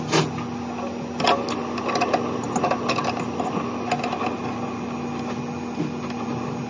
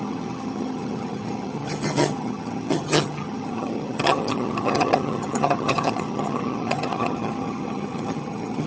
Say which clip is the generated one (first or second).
second